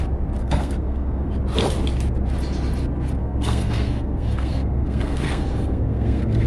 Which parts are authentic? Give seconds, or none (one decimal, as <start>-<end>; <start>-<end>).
0.0-0.4; 1.3-3.2